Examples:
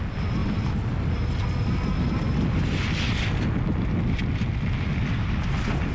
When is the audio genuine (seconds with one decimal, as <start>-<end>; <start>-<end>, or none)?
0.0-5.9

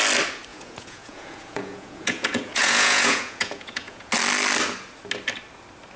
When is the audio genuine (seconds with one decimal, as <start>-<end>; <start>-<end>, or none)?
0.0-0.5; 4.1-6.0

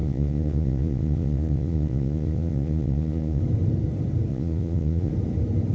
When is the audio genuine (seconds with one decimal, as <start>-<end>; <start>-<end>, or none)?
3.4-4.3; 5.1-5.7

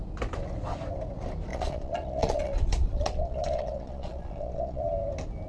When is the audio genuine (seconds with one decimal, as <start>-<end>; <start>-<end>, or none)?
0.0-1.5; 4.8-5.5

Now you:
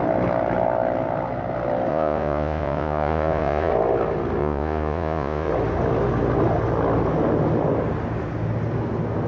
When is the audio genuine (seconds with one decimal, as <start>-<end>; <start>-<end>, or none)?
0.0-1.9; 3.7-4.4; 5.5-9.3

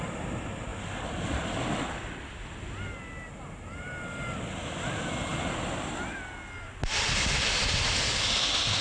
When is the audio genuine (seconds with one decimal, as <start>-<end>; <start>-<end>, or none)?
0.0-8.8

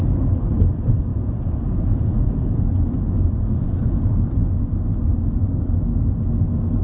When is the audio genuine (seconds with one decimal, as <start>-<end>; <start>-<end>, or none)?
0.0-1.1; 4.6-6.8